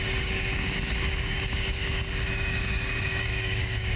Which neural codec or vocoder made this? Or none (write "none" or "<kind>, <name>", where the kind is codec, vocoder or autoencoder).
codec, DAC